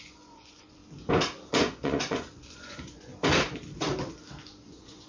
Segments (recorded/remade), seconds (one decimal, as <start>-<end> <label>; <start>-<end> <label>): 0.0-0.8 remade; 0.8-1.5 recorded; 1.5-3.1 remade; 3.1-4.4 recorded; 4.4-5.1 remade

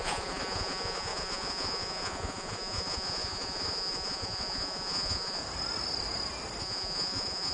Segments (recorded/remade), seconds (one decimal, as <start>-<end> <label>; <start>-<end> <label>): 0.0-5.4 remade; 5.4-6.6 recorded; 6.6-7.5 remade

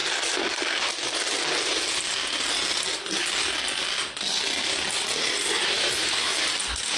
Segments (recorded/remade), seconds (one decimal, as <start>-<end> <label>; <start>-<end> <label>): 0.0-7.0 recorded

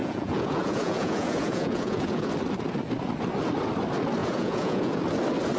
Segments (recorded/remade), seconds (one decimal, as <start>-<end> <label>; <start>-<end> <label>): 0.0-2.3 remade; 2.3-4.2 recorded; 4.2-5.0 remade; 5.0-5.6 recorded

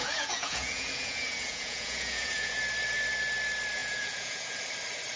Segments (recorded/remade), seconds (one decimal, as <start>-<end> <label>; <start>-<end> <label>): 0.0-2.6 remade; 2.6-3.8 recorded; 3.8-4.6 remade; 4.6-5.2 recorded

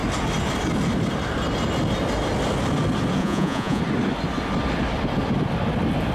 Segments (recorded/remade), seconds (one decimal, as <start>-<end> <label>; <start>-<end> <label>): 0.0-3.2 recorded; 3.2-3.8 remade; 3.8-6.1 recorded

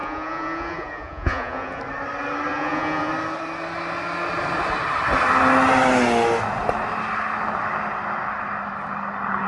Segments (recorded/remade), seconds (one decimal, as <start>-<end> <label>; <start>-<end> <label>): 0.0-1.8 remade; 1.8-2.5 recorded; 2.5-3.1 remade; 3.1-9.5 recorded